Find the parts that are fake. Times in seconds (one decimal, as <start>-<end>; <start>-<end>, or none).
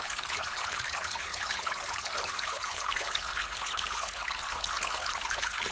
0.0-5.7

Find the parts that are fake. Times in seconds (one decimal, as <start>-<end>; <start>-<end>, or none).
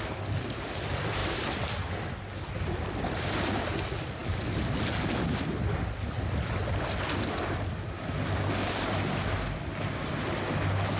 none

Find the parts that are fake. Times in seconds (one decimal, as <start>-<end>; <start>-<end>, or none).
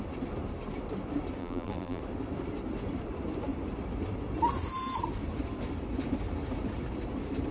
1.4-2.0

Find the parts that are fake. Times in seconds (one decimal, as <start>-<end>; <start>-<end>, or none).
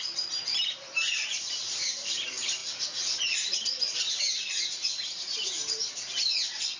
0.0-2.6; 4.1-5.8